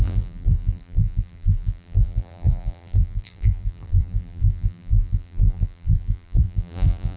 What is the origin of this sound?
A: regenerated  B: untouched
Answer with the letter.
A